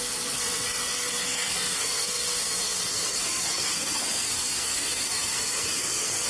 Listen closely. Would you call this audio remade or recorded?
remade